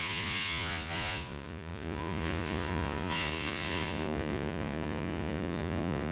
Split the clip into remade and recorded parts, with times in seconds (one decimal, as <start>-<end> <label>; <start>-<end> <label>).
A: 0.0-6.1 remade